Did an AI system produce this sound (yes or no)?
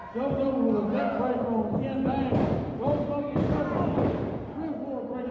no